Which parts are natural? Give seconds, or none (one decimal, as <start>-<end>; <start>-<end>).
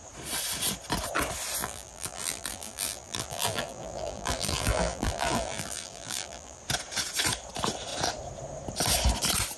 0.0-1.6; 6.6-9.6